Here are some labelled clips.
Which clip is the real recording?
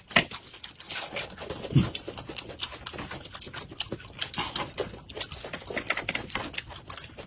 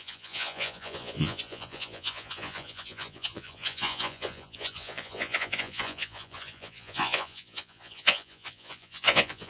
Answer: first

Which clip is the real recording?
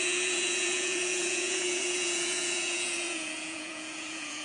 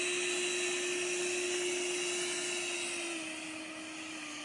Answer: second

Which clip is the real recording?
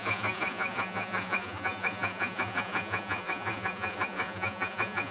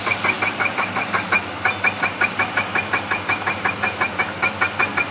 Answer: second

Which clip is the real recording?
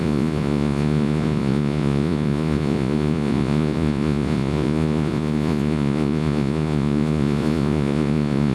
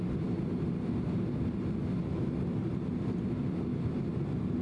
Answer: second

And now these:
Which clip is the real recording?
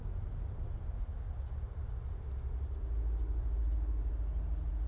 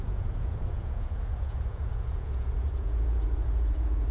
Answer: first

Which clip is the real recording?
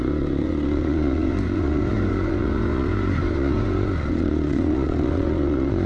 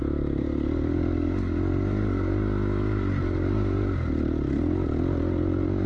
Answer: second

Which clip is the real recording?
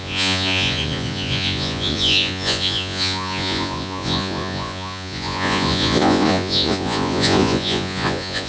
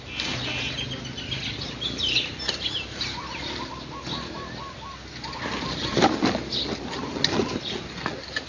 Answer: second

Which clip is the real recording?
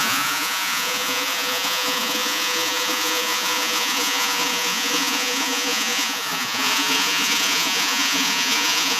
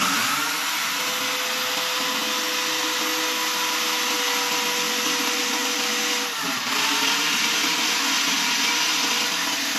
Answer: second